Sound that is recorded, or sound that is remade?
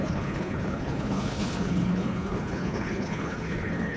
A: remade